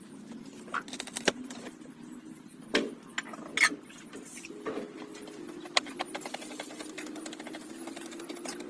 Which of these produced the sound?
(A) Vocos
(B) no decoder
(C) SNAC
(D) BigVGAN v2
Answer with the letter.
B